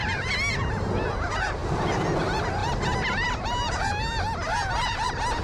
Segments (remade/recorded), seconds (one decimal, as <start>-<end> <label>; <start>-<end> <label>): 0.0-5.4 recorded